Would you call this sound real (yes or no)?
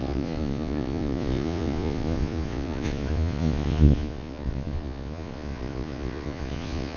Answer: no